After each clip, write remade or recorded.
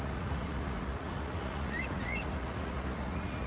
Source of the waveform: remade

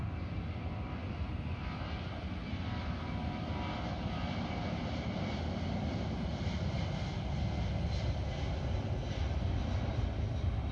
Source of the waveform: recorded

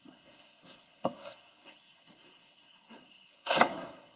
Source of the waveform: remade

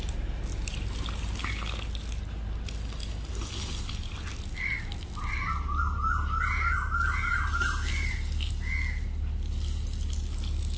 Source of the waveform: recorded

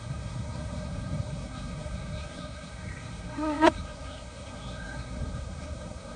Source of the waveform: remade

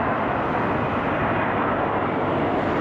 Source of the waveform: recorded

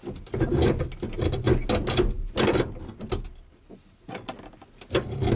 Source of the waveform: recorded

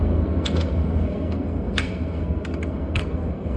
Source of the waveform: remade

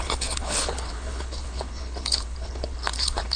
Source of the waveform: remade